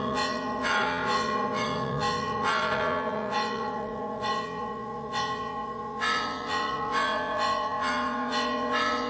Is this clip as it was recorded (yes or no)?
no